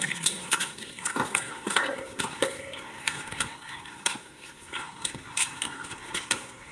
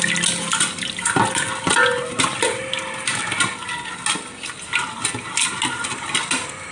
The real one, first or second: second